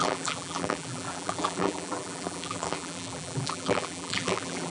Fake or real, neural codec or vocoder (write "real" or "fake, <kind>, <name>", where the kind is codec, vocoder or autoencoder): fake, vocoder, BigVGAN v2